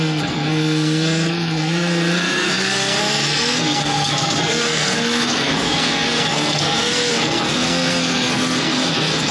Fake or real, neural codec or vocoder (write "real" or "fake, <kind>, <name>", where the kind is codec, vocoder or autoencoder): fake, codec, SNAC